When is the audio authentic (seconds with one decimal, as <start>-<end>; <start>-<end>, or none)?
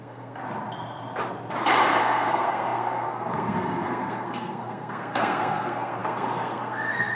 0.4-2.0